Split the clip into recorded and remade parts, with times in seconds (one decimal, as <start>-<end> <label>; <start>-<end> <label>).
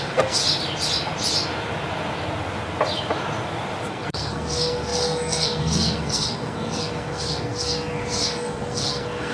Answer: 0.0-0.4 remade; 0.4-3.9 recorded; 3.9-9.3 remade